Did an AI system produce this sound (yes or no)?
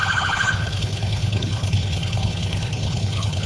yes